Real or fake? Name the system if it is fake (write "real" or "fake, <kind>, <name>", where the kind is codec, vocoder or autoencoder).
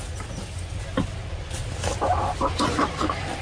real